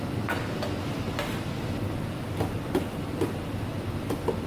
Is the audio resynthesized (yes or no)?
no